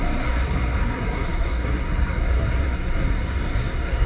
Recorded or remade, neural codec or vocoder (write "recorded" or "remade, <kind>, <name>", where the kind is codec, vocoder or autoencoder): remade, codec, SNAC